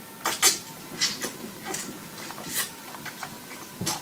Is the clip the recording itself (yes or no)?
yes